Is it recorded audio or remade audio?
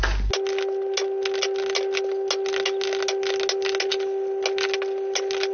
recorded